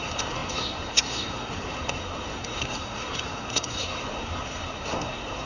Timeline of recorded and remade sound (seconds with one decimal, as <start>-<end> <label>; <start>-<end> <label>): 0.0-5.5 remade